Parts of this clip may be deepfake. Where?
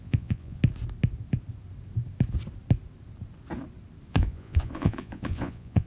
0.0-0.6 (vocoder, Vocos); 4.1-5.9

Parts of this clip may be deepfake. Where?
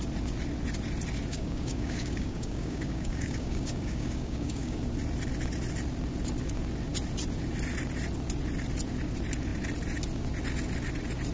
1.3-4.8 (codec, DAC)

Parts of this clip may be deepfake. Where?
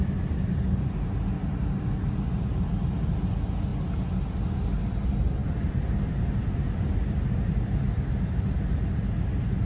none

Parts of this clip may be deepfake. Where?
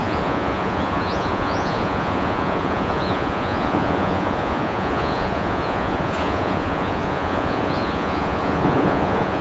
0.0-9.4 (vocoder, Vocos)